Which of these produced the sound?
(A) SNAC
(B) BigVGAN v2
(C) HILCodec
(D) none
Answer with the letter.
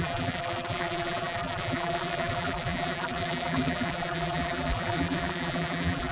B